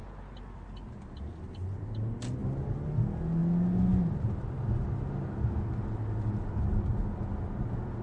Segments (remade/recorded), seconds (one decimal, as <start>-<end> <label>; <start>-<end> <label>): 0.0-8.0 recorded

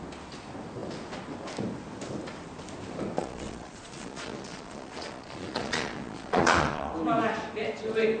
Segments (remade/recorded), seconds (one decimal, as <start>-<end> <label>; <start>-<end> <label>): 0.0-3.2 recorded; 3.2-6.9 remade; 6.9-8.2 recorded

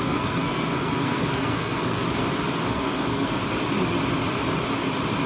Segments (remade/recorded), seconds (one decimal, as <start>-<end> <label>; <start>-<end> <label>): 0.0-2.2 remade; 2.2-2.7 recorded; 2.7-3.4 remade; 3.4-5.3 recorded

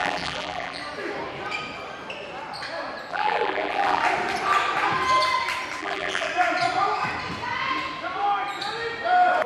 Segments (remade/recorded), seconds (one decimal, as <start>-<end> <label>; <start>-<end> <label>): 0.0-0.8 remade; 0.8-3.1 recorded; 3.1-4.0 remade; 4.0-5.8 recorded; 5.8-6.3 remade; 6.3-9.5 recorded

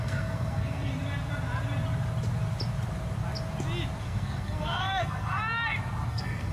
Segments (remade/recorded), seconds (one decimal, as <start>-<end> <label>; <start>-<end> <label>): 0.0-0.9 remade; 0.9-4.0 recorded; 4.0-5.4 remade; 5.4-6.1 recorded; 6.1-6.5 remade